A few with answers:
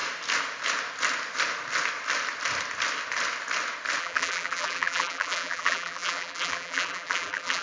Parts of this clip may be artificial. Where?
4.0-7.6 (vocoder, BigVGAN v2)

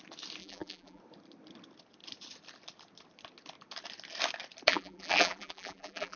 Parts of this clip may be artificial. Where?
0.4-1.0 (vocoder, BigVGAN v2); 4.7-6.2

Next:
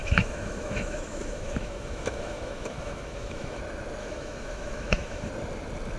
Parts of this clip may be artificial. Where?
0.0-3.6 (autoencoder, DAC-VAE); 4.0-5.3

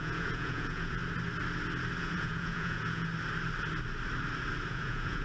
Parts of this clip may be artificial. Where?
0.0-1.0 (vocoder, Vocos); 2.0-3.1; 4.7-5.2

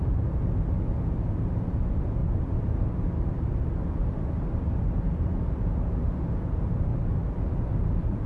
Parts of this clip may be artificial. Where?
6.9-8.3 (vocoder, BigVGAN v2)

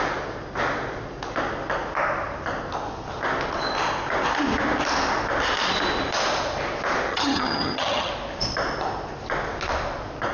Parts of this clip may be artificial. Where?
7.1-8.1 (vocoder, HiFi-GAN)

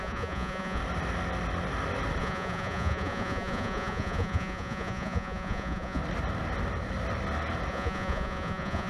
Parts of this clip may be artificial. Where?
0.0-0.8 (vocoder, Vocos); 2.2-6.0; 7.7-8.9

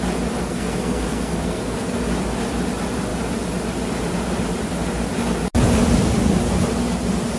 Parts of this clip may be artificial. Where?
0.4-2.0 (codec, SNAC)